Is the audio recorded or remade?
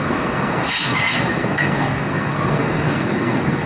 remade